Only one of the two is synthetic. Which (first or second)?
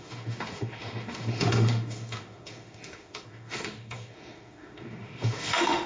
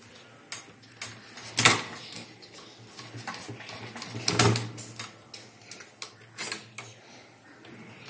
first